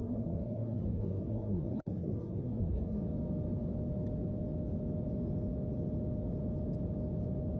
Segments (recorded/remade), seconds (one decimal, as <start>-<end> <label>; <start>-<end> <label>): 0.0-3.0 remade; 3.0-7.6 recorded